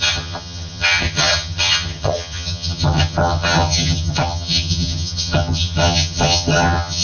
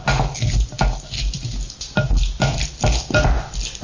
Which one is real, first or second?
second